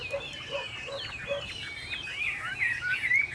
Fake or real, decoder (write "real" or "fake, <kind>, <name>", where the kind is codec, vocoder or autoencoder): fake, vocoder, BigVGAN v2